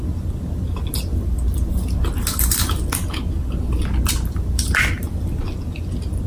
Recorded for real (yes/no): yes